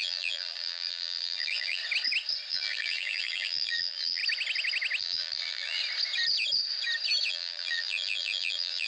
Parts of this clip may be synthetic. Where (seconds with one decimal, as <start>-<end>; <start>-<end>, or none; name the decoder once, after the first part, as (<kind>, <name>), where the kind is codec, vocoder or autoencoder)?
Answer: 0.0-1.8 (vocoder, BigVGAN v2); 2.5-4.2; 5.0-5.8; 7.3-8.9